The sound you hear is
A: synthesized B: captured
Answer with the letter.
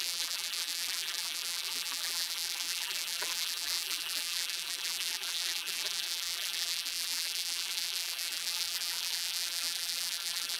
A